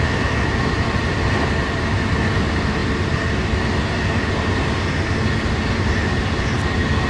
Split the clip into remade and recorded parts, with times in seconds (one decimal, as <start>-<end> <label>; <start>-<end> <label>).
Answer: 0.0-7.1 recorded